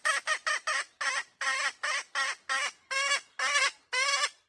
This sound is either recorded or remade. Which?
recorded